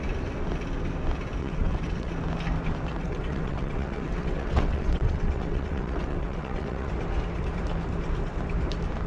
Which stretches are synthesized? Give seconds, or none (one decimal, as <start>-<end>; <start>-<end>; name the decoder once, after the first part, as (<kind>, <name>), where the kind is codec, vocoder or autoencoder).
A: 1.4-2.1 (vocoder, WaveNeXt); 2.9-6.9